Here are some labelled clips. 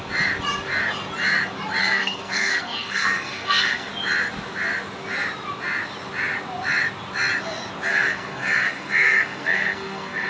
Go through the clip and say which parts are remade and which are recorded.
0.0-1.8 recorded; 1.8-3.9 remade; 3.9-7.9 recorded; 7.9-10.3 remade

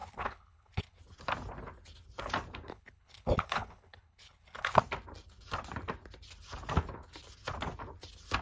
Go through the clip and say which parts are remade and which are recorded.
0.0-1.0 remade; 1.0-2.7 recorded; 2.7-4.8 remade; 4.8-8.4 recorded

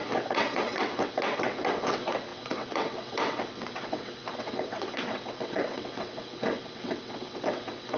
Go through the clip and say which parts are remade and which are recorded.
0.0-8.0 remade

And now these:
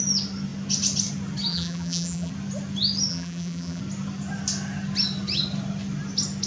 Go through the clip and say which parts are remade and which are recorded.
0.0-1.5 recorded; 1.5-2.3 remade; 2.3-3.1 recorded; 3.1-3.8 remade; 3.8-6.5 recorded

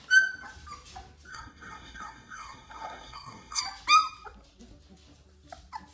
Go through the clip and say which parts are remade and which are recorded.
0.0-1.3 recorded; 1.3-3.6 remade; 3.6-5.9 recorded